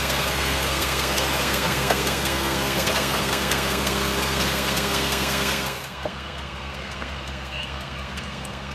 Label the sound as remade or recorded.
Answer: remade